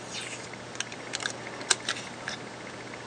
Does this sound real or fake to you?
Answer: real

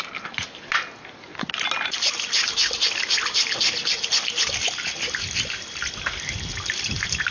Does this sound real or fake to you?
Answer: real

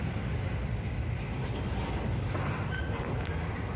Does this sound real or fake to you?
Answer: real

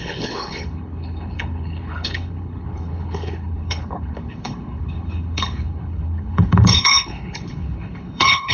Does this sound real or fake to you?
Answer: fake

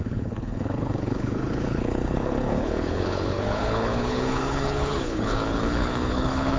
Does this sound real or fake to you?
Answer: fake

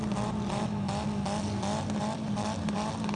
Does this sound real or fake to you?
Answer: real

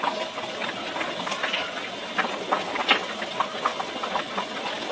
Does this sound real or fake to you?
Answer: real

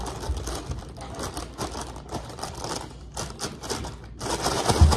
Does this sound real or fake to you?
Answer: real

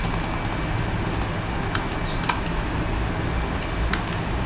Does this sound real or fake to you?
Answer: real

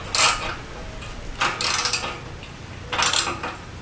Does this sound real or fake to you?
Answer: real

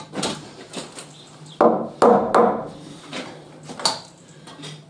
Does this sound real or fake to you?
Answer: real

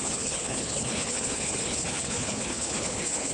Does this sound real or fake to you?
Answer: fake